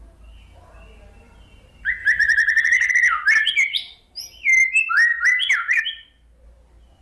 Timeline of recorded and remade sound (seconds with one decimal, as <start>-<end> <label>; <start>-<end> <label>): 0.0-2.0 recorded; 2.0-2.9 remade; 2.9-3.4 recorded; 3.4-4.2 remade; 4.2-5.1 recorded; 5.1-5.8 remade; 5.8-7.0 recorded